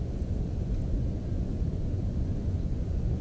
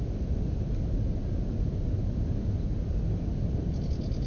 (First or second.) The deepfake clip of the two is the first